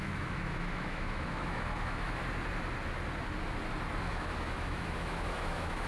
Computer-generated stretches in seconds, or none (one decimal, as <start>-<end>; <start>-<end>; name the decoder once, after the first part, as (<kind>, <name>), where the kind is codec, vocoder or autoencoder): 0.0-2.2 (autoencoder, DAC-VAE); 4.0-5.9